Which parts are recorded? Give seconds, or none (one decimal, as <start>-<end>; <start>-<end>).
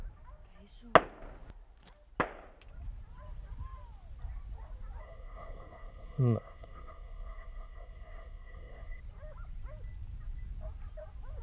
0.0-5.0; 9.0-11.4